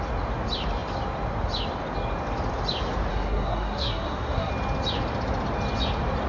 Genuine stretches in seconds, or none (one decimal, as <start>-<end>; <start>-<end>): 0.0-3.1; 4.5-6.3